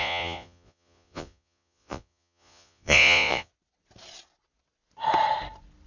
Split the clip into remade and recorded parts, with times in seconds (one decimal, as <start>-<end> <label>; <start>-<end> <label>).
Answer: 0.0-3.5 remade; 3.5-5.9 recorded